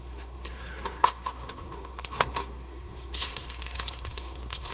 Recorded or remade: remade